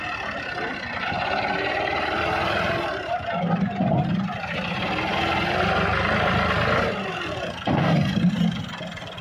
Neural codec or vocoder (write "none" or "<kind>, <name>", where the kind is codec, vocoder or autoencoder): none